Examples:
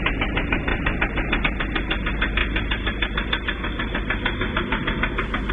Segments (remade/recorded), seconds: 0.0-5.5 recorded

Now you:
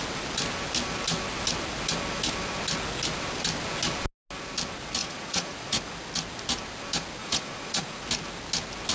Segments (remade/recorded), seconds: 0.0-5.0 recorded; 5.0-5.8 remade; 5.8-7.2 recorded; 7.2-8.0 remade; 8.0-8.9 recorded

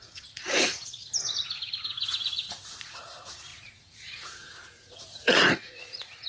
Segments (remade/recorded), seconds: 0.0-1.0 remade; 1.0-2.0 recorded; 2.0-6.3 remade

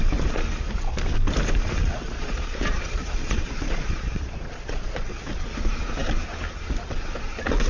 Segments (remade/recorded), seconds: 0.0-1.8 recorded; 1.8-5.4 remade; 5.4-7.7 recorded

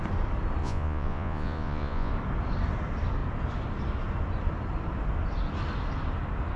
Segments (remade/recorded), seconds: 0.0-0.6 recorded; 0.6-2.1 remade; 2.1-6.6 recorded

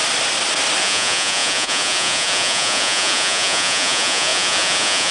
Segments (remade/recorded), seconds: 0.0-0.8 recorded; 0.8-5.1 remade

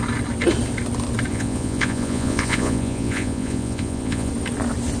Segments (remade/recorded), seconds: 0.0-1.3 recorded; 1.3-4.3 remade; 4.3-5.0 recorded

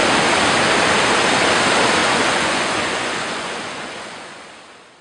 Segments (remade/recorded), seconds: 0.0-2.0 recorded; 2.0-4.5 remade; 4.5-5.0 recorded